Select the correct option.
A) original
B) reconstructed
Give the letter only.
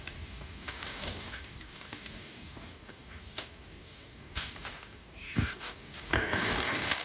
B